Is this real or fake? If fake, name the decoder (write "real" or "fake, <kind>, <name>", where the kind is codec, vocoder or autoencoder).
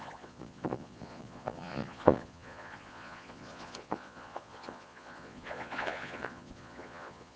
fake, vocoder, Vocos